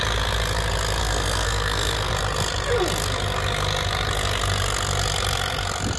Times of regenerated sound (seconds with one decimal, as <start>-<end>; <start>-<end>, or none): 1.0-2.1